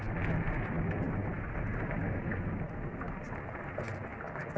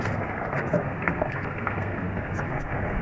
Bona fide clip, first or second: first